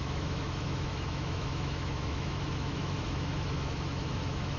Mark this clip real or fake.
fake